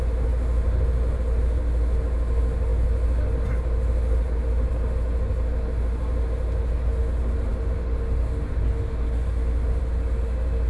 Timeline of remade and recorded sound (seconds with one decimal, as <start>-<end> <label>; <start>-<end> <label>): 0.0-10.7 recorded